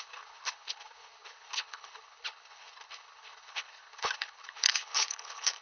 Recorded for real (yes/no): no